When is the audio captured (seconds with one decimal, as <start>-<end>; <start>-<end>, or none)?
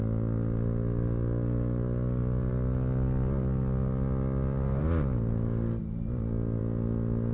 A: 0.0-7.3